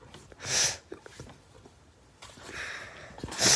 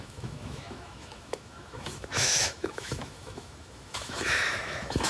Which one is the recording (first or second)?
first